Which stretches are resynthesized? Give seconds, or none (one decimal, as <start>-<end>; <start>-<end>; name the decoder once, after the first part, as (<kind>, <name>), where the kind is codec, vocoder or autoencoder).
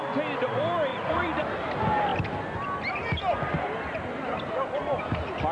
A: 0.9-1.5 (vocoder, Vocos)